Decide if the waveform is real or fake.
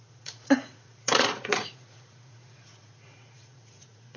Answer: fake